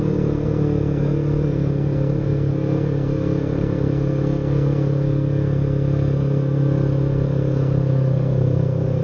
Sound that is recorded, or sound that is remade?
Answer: remade